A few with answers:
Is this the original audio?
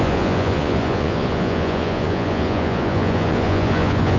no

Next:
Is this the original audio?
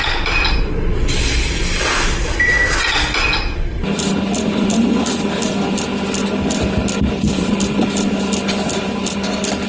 yes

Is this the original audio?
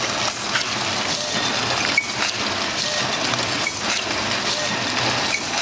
yes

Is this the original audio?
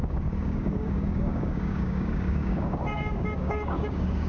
no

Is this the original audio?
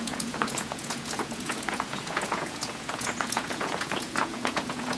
no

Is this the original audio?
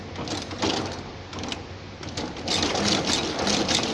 yes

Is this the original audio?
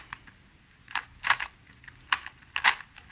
yes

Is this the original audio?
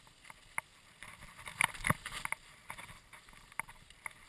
yes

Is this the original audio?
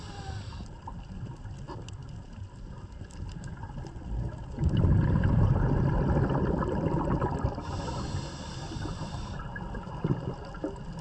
yes